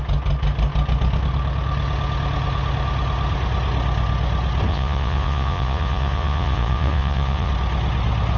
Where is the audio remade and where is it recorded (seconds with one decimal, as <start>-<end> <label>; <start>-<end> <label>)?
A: 0.0-4.7 recorded; 4.7-7.5 remade; 7.5-8.4 recorded